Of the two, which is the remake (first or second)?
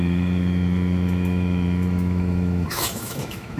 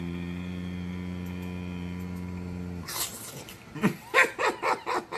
first